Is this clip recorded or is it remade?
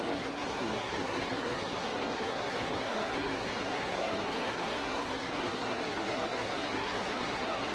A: remade